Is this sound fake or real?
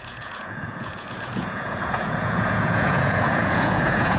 fake